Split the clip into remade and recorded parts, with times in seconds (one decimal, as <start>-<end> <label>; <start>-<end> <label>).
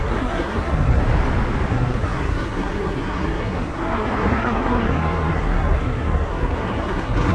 0.0-1.0 remade; 1.0-1.7 recorded; 1.7-7.3 remade